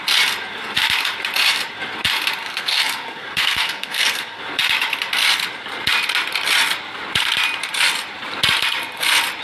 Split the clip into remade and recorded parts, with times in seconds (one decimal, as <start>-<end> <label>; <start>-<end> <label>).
0.0-2.4 recorded; 2.4-4.4 remade; 4.4-9.4 recorded